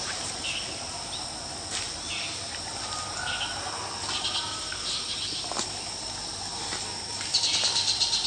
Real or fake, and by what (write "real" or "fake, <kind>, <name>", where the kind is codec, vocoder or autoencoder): real